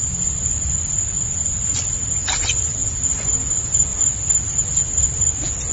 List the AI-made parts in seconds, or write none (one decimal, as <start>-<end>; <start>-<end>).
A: none